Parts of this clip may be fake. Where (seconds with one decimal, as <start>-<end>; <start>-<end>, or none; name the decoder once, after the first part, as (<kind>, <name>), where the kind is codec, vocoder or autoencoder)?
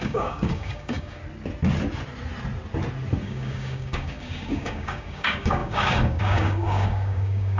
0.0-1.2 (codec, DAC); 3.2-7.6